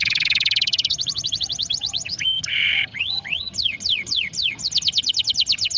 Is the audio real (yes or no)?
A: no